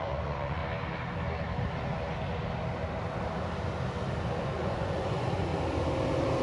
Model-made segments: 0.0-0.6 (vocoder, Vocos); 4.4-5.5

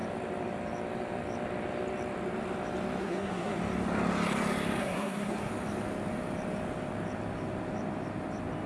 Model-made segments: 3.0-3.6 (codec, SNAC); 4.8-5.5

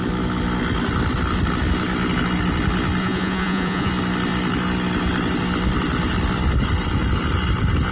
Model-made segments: 3.0-3.9 (vocoder, Vocos)

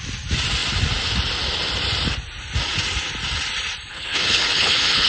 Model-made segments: 3.9-5.1 (codec, HILCodec)

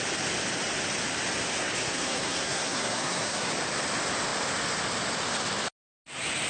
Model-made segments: 1.6-3.5 (codec, SNAC)

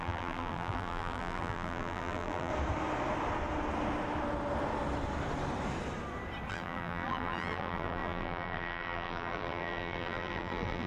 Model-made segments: 0.0-2.5 (vocoder, BigVGAN v2); 6.5-10.9

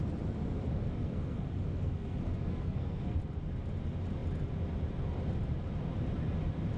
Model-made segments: 0.7-3.2 (codec, SNAC)